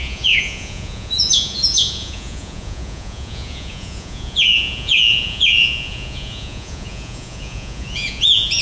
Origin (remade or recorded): remade